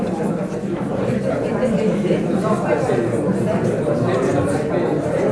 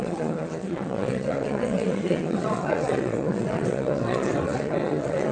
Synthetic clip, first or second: second